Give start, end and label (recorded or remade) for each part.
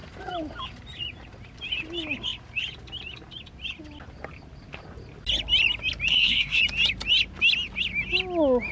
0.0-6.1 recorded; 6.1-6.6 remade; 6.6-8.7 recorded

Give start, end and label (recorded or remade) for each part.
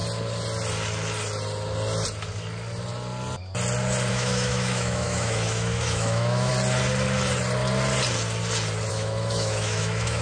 0.0-4.1 recorded; 4.1-6.5 remade; 6.5-8.9 recorded; 8.9-10.2 remade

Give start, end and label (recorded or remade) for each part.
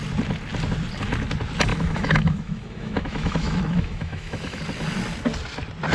0.0-1.7 recorded; 1.7-4.6 remade; 4.6-5.9 recorded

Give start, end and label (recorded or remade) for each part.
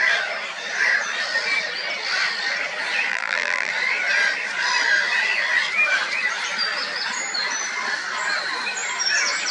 0.0-3.1 recorded; 3.1-3.7 remade; 3.7-9.5 recorded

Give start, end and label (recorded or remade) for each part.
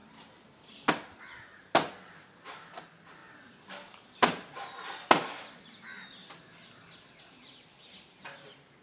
0.0-8.8 recorded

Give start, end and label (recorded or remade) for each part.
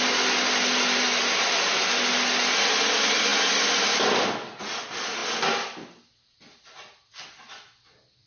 0.0-8.3 recorded